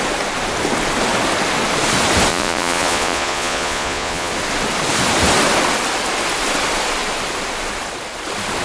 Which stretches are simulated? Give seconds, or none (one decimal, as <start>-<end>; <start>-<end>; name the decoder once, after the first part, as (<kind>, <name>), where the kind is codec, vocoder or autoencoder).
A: 2.3-4.3 (vocoder, Vocos)